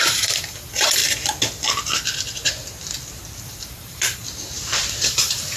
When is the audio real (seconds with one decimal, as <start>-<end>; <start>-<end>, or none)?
1.0-3.4; 4.2-5.1